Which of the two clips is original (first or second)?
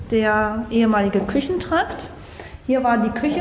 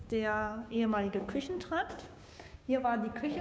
first